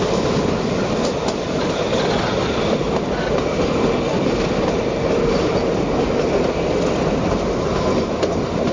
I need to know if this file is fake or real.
real